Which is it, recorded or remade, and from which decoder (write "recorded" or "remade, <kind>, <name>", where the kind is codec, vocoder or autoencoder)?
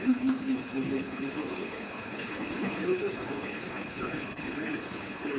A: remade, codec, HILCodec